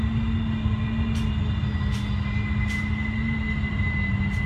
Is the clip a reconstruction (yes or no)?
no